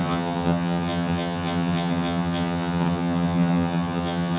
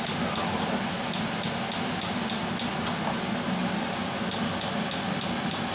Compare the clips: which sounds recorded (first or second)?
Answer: second